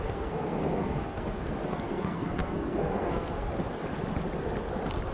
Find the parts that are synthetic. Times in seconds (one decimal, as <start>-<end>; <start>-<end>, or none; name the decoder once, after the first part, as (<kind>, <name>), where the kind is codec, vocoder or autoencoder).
0.0-3.5 (codec, SNAC)